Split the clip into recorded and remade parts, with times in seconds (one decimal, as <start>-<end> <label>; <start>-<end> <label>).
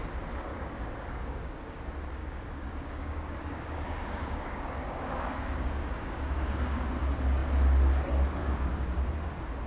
0.0-0.5 recorded; 0.5-1.7 remade; 1.7-2.2 recorded; 2.2-6.9 remade; 6.9-8.4 recorded; 8.4-9.0 remade; 9.0-9.7 recorded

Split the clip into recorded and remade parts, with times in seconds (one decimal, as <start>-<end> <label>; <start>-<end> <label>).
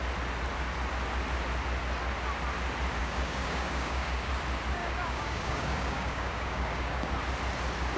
0.0-3.0 recorded; 3.0-4.3 remade; 4.3-4.8 recorded; 4.8-7.1 remade; 7.1-8.0 recorded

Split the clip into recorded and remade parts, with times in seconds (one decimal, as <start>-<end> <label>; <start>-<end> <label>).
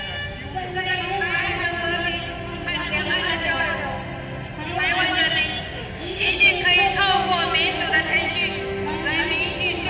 0.0-5.8 recorded; 5.8-6.5 remade; 6.5-9.9 recorded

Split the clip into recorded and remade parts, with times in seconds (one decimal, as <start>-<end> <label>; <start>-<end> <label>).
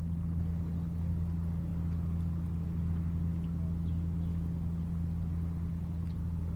0.0-6.6 recorded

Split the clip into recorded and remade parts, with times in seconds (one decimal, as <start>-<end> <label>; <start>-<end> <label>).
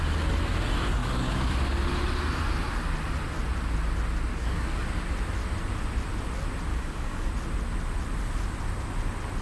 0.0-1.0 recorded; 1.0-1.5 remade; 1.5-4.3 recorded; 4.3-5.0 remade; 5.0-6.7 recorded; 6.7-7.3 remade; 7.3-9.4 recorded